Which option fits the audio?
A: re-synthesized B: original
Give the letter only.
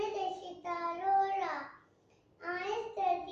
B